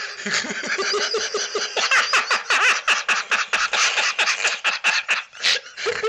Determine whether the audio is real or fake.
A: real